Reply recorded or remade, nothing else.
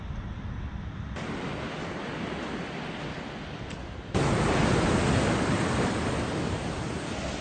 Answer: recorded